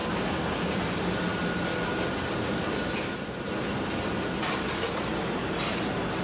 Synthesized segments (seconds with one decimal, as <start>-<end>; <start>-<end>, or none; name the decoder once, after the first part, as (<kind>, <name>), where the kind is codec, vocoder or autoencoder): 0.0-0.8 (codec, DAC)

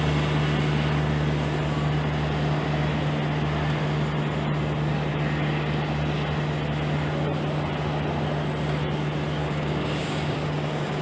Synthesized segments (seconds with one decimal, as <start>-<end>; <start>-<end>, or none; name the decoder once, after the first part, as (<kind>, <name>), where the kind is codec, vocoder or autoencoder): 9.4-11.0 (codec, DAC)

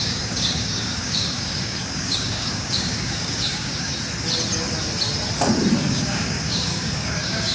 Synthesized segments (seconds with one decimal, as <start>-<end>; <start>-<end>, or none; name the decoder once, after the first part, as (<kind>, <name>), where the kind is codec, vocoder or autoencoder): 0.0-3.9 (codec, DAC); 5.9-7.5

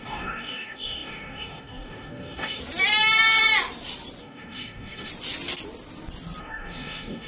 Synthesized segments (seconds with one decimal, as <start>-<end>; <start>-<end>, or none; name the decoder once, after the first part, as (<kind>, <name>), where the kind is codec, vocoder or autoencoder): 0.0-2.6 (codec, DAC); 4.2-5.1; 6.4-7.3

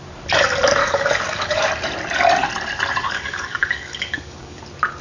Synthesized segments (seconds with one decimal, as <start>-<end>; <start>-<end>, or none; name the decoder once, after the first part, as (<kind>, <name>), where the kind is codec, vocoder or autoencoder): 0.8-1.7 (codec, DAC); 3.0-4.6

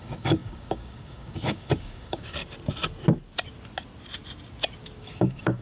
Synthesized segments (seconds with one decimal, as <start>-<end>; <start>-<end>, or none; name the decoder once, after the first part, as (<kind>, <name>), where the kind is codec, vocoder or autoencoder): 0.0-2.4 (codec, DAC); 5.0-5.6

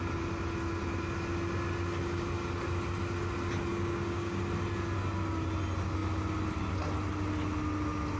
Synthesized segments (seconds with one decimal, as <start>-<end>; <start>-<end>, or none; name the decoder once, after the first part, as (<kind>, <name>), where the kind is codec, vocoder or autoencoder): 3.7-4.4 (codec, DAC)

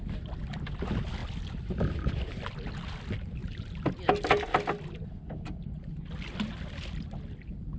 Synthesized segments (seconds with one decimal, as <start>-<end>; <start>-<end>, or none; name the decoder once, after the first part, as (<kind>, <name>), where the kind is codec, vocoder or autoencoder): none